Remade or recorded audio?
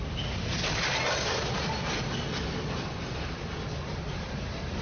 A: recorded